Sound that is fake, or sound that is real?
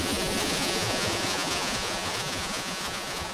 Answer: fake